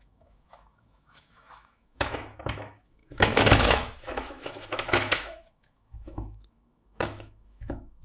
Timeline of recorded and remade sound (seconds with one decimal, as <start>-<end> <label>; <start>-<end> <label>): 0.0-8.0 remade